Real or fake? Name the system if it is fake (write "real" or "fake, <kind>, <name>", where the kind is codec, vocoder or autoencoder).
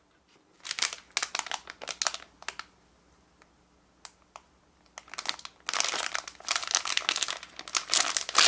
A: real